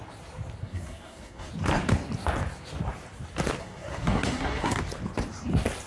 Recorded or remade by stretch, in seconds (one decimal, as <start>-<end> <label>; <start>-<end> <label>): 0.0-0.6 recorded; 0.6-1.5 remade; 1.5-3.6 recorded; 3.6-4.8 remade; 4.8-5.9 recorded